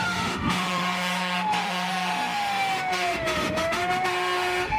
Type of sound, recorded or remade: remade